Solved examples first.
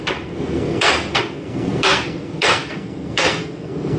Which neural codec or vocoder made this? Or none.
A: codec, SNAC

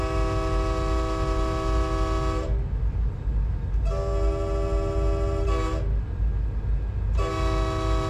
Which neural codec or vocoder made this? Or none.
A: none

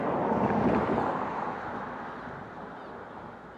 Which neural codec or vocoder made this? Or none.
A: none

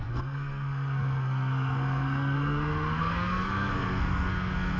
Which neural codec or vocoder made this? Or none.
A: codec, SNAC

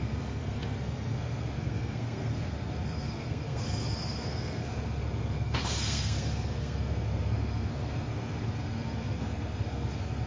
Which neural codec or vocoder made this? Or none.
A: codec, SNAC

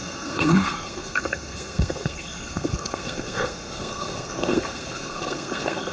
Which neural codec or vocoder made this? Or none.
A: codec, SNAC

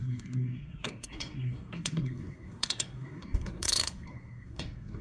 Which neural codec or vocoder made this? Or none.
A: codec, SNAC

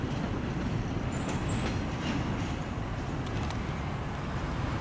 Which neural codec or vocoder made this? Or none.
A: none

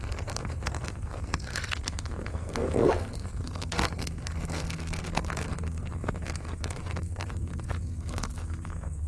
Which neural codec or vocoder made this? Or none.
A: codec, SNAC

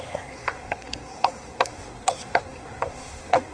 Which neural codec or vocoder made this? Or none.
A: codec, SNAC